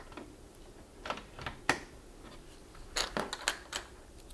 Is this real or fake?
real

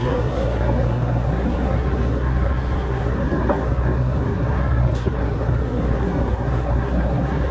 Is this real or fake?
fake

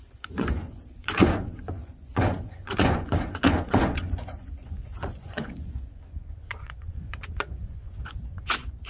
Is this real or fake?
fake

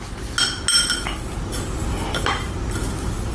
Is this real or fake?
real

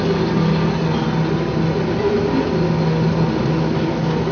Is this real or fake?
real